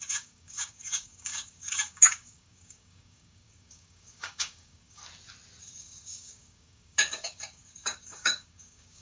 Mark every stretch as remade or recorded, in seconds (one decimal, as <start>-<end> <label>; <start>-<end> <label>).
0.0-5.0 remade; 5.0-5.6 recorded; 5.6-9.0 remade